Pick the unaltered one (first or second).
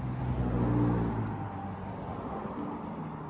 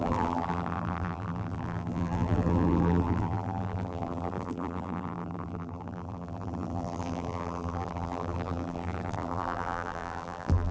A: first